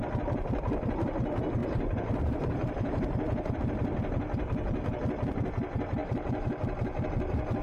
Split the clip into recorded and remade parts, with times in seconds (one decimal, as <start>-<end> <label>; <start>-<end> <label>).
0.0-1.6 recorded; 1.6-3.6 remade; 3.6-6.0 recorded; 6.0-6.6 remade; 6.6-7.6 recorded